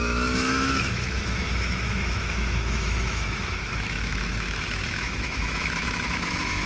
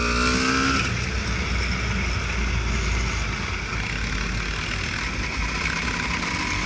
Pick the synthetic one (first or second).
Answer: first